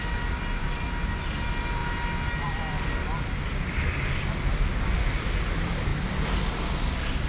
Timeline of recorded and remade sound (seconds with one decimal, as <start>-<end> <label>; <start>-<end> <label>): 0.0-7.3 recorded